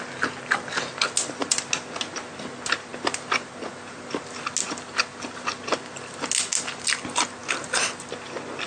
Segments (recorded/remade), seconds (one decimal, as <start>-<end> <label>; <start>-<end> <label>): 0.0-8.7 recorded